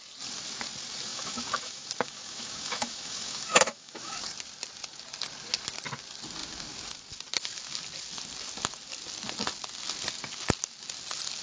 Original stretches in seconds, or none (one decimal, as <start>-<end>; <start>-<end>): 0.0-1.1; 4.2-11.4